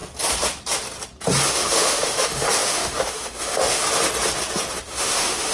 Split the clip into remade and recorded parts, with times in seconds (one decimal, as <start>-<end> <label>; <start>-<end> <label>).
0.0-1.5 recorded; 1.5-3.8 remade; 3.8-4.8 recorded; 4.8-5.5 remade